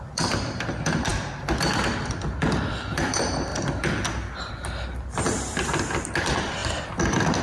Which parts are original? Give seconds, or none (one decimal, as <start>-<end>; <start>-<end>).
1.1-2.4; 3.5-4.4